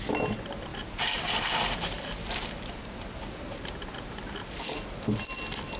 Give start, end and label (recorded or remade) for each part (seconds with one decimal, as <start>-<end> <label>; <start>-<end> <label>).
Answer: 0.0-0.7 recorded; 0.7-4.2 remade; 4.2-5.8 recorded